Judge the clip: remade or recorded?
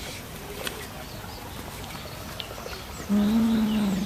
recorded